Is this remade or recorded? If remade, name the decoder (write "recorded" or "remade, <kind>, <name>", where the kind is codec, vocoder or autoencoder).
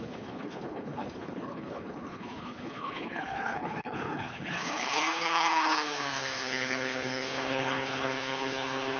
remade, codec, HILCodec